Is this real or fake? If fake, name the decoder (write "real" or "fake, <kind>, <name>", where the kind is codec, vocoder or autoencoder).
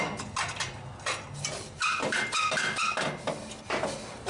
real